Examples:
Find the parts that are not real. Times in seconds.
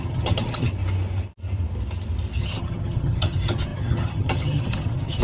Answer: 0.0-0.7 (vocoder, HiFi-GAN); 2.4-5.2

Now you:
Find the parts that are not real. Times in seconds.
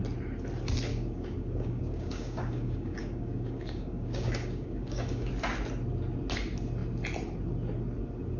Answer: 0.9-5.3 (codec, DAC)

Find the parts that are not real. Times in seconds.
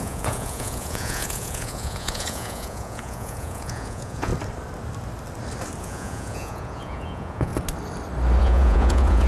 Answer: 0.0-4.3 (vocoder, Vocos); 5.8-7.5; 8.4-9.3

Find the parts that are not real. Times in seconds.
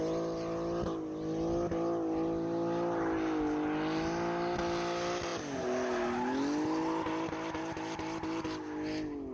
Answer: none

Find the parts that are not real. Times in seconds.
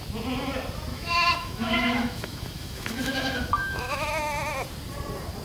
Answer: 0.9-4.1 (autoencoder, DAC-VAE)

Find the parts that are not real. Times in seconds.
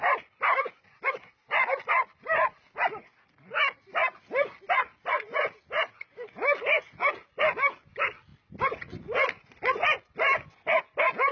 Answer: none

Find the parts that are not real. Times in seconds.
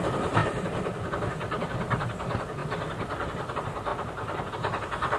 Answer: 0.4-1.1 (vocoder, BigVGAN v2); 2.6-3.5; 3.9-4.5